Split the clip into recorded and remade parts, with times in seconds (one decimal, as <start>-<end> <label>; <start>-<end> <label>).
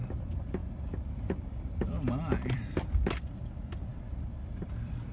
0.0-5.1 remade